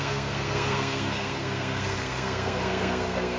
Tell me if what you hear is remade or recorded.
remade